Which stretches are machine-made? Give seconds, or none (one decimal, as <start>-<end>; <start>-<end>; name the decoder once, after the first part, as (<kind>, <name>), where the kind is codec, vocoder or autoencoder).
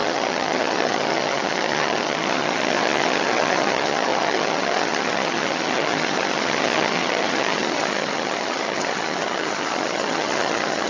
0.0-10.9 (vocoder, HiFi-GAN)